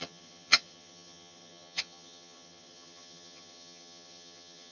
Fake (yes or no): yes